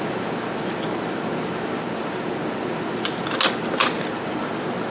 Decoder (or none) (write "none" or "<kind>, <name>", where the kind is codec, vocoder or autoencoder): none